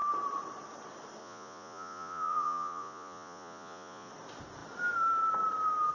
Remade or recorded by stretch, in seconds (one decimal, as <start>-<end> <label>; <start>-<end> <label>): 0.0-1.2 recorded; 1.2-4.1 remade; 4.1-5.9 recorded

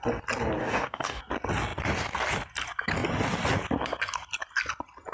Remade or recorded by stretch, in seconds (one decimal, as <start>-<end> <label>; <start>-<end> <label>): 0.0-0.6 recorded; 0.6-1.2 remade; 1.2-5.1 recorded

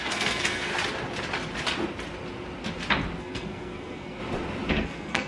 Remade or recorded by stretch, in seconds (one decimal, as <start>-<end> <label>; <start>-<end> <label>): 0.0-0.7 remade; 0.7-3.2 recorded; 3.2-4.2 remade; 4.2-4.7 recorded; 4.7-5.3 remade

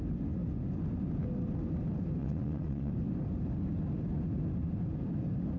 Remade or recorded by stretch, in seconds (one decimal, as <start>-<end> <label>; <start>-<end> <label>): 0.0-2.2 recorded; 2.2-2.9 remade; 2.9-5.6 recorded

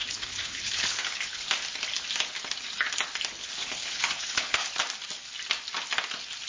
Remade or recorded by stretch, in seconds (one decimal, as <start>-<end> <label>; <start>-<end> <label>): 0.0-1.5 remade; 1.5-3.4 recorded; 3.4-4.8 remade; 4.8-6.5 recorded

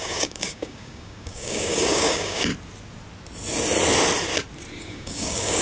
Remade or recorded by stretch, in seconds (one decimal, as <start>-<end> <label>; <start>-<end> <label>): 0.0-2.5 remade; 2.5-4.8 recorded; 4.8-5.6 remade